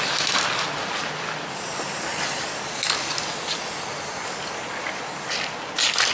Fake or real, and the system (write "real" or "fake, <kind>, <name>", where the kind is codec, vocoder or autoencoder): real